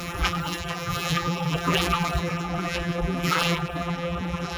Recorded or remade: remade